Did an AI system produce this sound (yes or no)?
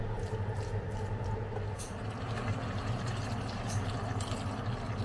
no